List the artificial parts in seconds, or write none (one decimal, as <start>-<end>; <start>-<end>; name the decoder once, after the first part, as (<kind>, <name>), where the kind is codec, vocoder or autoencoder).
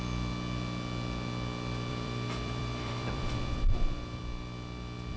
1.9-4.2 (vocoder, BigVGAN v2)